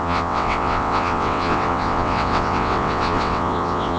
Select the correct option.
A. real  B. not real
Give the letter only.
B